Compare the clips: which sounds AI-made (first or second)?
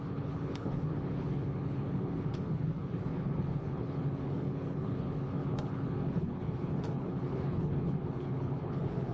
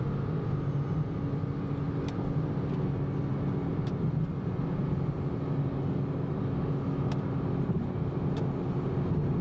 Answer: first